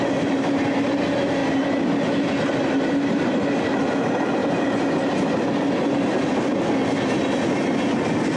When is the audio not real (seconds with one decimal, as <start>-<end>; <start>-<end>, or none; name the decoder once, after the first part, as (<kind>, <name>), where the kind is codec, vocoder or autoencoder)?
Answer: none